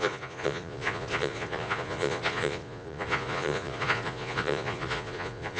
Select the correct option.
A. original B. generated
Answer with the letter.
B